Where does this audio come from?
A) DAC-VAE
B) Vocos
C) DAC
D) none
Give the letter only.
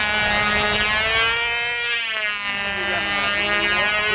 D